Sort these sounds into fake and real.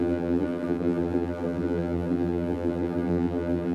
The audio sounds fake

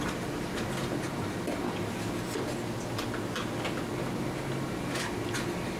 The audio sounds real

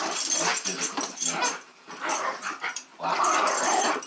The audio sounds fake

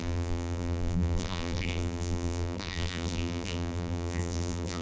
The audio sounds fake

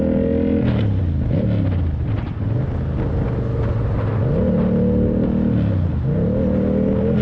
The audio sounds real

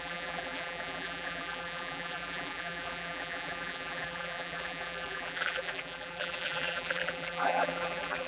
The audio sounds fake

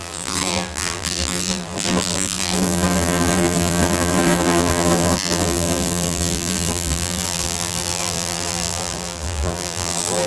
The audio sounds fake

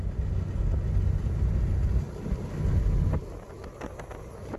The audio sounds real